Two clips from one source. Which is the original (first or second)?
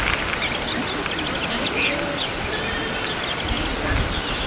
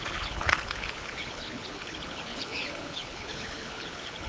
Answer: first